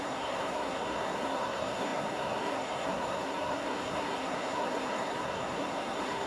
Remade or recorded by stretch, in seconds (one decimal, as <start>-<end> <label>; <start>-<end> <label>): 0.0-6.3 remade